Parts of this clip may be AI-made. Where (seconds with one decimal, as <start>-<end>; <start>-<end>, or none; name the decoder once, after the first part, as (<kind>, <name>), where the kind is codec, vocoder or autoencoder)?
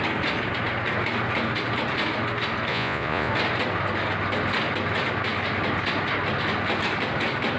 2.7-3.3 (vocoder, Vocos)